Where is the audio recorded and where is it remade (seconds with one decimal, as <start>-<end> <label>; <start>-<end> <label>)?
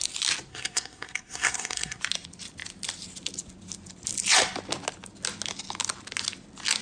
0.0-0.5 recorded; 0.5-2.0 remade; 2.0-6.8 recorded